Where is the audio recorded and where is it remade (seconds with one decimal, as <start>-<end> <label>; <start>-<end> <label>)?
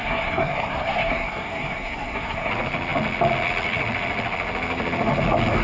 0.0-2.5 remade; 2.5-5.6 recorded